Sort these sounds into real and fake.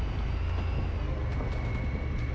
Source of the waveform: real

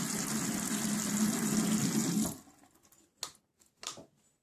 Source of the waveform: real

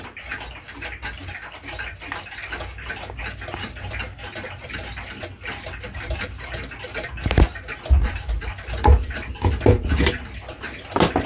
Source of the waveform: real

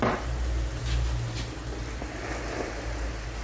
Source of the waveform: real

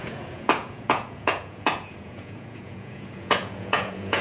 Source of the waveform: fake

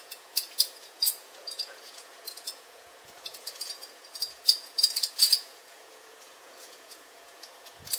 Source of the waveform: fake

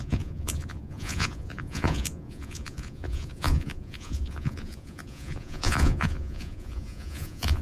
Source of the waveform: fake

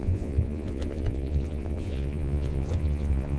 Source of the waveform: fake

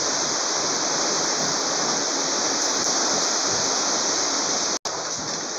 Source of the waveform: real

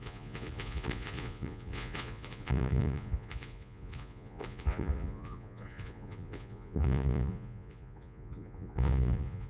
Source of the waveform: fake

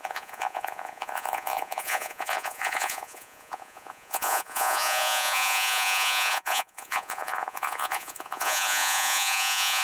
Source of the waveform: fake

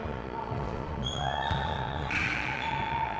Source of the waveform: fake